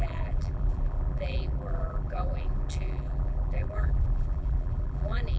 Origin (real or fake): fake